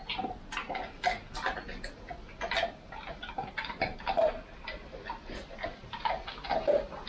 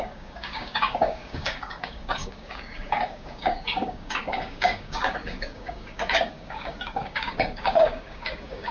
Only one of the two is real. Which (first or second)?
first